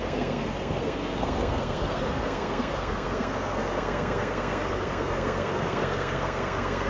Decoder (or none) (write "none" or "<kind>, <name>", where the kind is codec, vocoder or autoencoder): codec, SNAC